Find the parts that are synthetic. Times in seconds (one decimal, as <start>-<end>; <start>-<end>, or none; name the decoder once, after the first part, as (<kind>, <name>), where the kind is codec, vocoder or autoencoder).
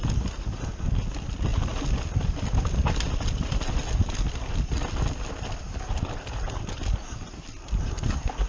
none